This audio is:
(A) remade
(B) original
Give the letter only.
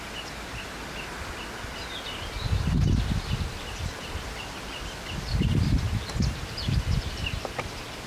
B